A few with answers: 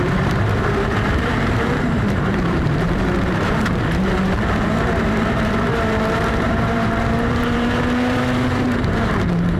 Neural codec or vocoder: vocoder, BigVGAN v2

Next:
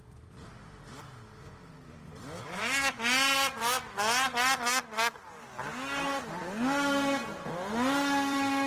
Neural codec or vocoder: none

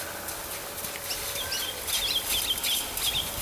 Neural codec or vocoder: none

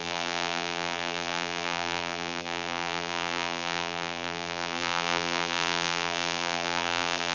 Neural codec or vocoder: vocoder, BigVGAN v2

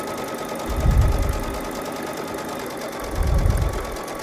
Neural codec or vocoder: none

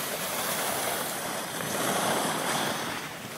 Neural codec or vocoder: vocoder, BigVGAN v2